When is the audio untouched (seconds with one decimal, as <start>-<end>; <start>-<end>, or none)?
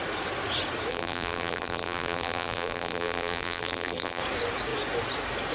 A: 0.0-0.9; 4.2-5.5